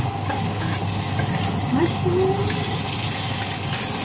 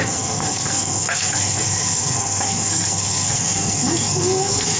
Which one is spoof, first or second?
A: second